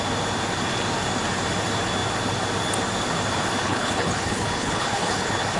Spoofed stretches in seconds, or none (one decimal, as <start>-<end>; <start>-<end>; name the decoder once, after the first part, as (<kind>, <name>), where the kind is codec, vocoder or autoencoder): 3.6-5.6 (codec, HILCodec)